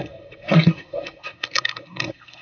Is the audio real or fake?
fake